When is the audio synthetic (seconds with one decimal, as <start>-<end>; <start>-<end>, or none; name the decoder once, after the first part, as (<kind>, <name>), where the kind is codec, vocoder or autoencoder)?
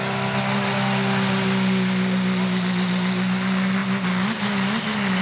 none